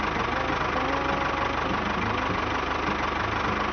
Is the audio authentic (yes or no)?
yes